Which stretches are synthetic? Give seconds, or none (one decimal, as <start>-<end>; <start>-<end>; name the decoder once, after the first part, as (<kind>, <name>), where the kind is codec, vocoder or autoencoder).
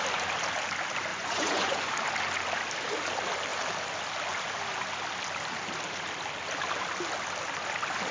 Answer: 1.1-1.9 (vocoder, Vocos)